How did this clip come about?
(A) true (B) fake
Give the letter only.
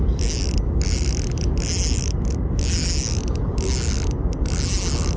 A